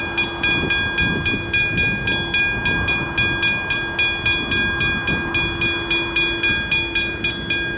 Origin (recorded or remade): recorded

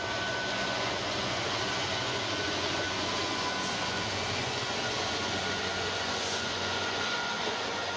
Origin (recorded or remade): remade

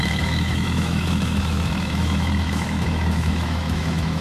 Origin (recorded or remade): remade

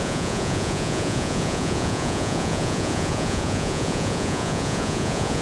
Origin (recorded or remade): remade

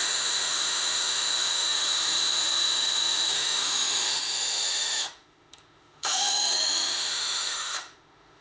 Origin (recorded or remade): remade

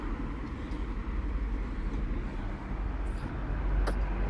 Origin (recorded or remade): recorded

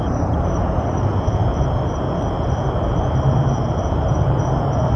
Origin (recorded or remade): remade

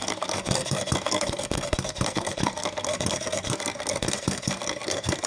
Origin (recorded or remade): remade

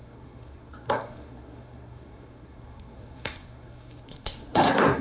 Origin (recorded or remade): remade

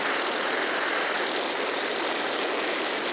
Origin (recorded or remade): recorded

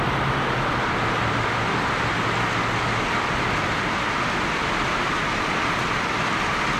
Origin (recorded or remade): recorded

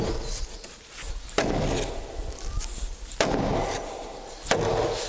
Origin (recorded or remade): recorded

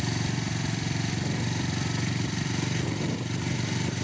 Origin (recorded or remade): remade